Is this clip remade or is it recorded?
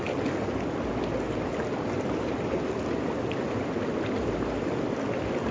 recorded